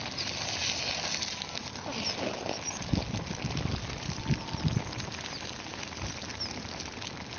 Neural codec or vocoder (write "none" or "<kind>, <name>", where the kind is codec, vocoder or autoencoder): none